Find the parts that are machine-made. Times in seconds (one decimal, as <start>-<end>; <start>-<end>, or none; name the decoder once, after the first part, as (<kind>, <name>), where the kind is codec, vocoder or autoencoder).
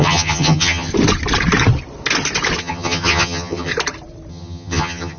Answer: 0.0-0.9 (vocoder, HiFi-GAN); 2.6-3.7; 4.3-5.2